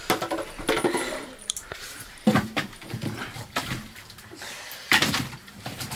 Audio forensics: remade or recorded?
remade